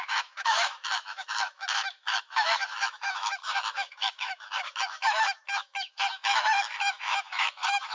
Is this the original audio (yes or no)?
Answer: no